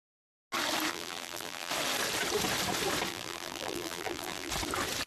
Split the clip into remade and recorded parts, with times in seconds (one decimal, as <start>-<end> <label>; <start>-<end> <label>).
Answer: 0.0-0.9 recorded; 0.9-1.7 remade; 1.7-3.1 recorded; 3.1-4.5 remade; 4.5-5.1 recorded